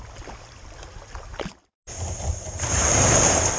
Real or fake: real